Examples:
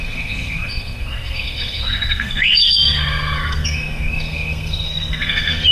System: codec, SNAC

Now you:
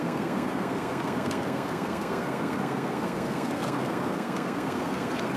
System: codec, SNAC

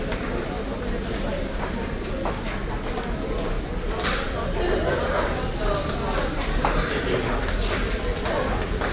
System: none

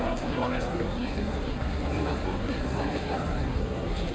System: codec, SNAC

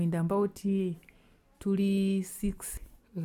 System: none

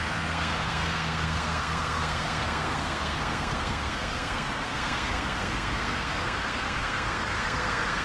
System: codec, SNAC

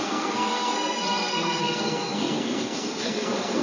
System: codec, SNAC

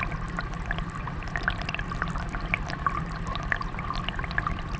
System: none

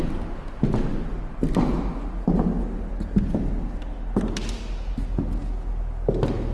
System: none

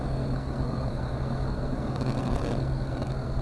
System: codec, SNAC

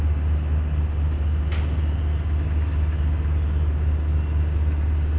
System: none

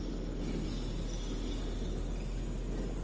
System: none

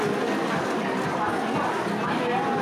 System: none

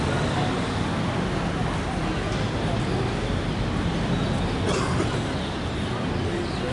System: none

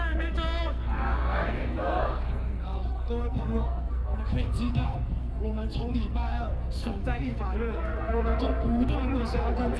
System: codec, SNAC